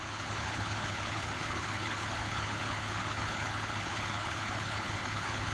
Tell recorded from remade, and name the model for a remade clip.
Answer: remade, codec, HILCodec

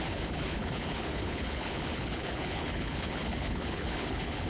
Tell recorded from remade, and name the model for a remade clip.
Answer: remade, codec, HILCodec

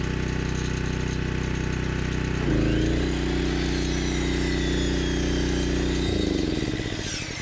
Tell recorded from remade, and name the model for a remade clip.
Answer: recorded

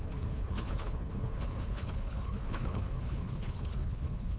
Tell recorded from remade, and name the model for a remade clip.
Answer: remade, codec, HILCodec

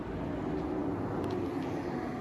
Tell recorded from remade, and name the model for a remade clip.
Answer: recorded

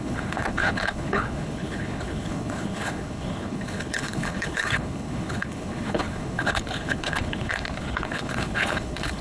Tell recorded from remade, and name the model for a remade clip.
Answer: remade, codec, HILCodec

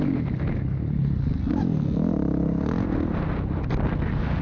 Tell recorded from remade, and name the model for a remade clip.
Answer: recorded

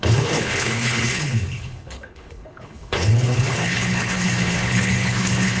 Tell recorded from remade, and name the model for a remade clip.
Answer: remade, codec, HILCodec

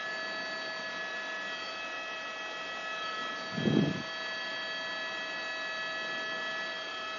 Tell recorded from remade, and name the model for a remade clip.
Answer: recorded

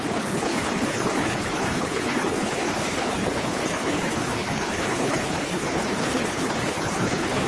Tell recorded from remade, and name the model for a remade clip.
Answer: remade, codec, HILCodec